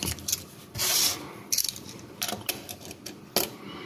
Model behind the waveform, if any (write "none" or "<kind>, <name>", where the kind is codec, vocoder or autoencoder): none